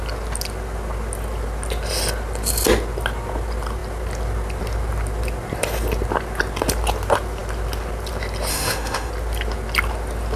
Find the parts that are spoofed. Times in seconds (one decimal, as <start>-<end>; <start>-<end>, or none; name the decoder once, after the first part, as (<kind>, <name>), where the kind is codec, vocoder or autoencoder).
8.5-9.1 (autoencoder, DAC-VAE)